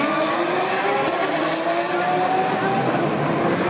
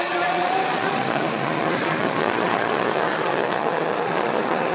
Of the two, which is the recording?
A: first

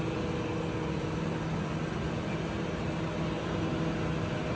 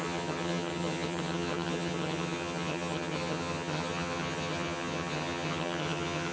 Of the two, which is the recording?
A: first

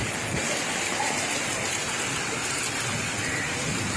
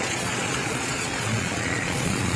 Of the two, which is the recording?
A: first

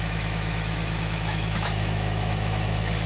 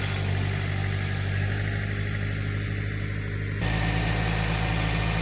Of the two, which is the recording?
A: second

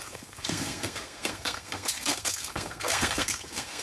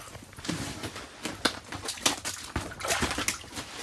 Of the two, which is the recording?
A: second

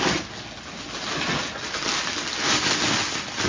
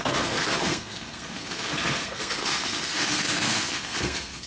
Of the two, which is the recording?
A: first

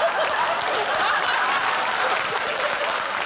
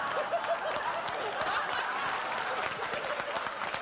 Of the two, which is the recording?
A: second